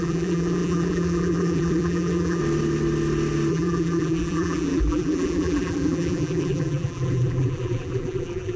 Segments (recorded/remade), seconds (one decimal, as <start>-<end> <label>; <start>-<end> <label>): 0.0-2.4 remade; 2.4-3.5 recorded; 3.5-8.6 remade